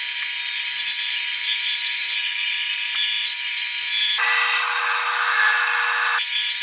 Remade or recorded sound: recorded